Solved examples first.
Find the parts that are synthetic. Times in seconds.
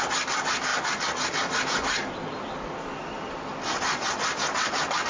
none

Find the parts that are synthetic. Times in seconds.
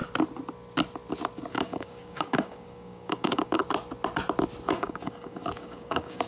1.5-3.6; 4.7-6.3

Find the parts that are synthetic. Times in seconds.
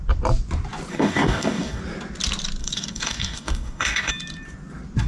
0.9-1.8; 2.6-4.1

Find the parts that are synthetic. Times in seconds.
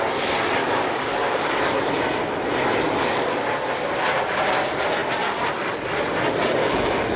0.6-1.5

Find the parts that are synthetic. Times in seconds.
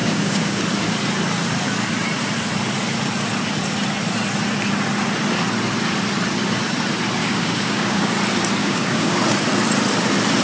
0.0-0.6; 7.2-8.1; 8.6-9.2